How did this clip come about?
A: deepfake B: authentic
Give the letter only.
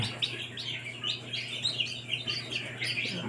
B